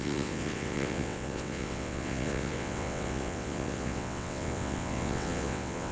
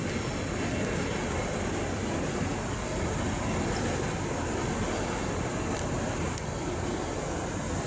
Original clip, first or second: second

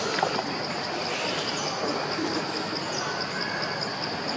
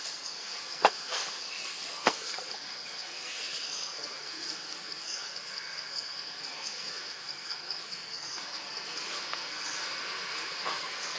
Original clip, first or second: first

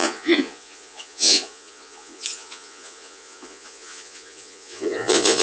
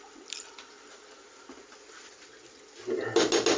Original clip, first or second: second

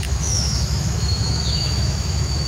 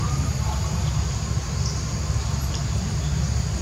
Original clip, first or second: second